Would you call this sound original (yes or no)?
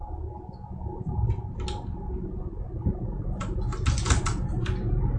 yes